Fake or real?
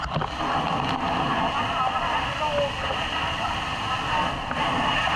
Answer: real